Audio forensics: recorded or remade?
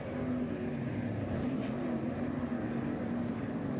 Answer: recorded